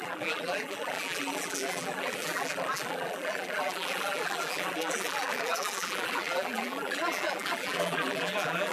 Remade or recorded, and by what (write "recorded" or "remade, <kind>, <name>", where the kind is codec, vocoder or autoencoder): remade, vocoder, BigVGAN v2